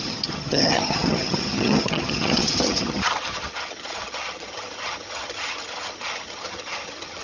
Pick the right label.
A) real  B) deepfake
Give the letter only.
B